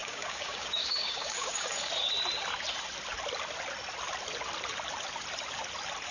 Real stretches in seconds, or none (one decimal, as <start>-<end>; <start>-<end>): 1.9-6.1